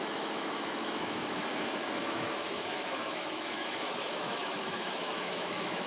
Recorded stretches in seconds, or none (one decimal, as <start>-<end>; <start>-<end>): none